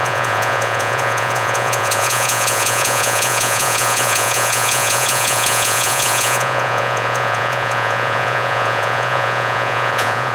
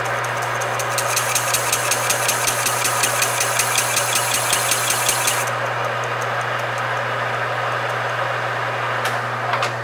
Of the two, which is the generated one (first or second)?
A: first